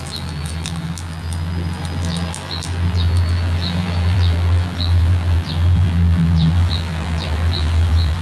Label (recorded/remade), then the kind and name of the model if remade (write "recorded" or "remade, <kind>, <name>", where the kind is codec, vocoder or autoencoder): remade, vocoder, BigVGAN v2